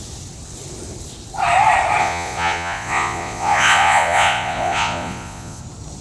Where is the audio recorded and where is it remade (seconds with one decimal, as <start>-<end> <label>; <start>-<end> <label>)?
0.0-2.0 recorded; 2.0-5.6 remade; 5.6-6.0 recorded